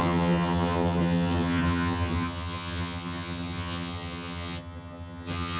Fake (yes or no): yes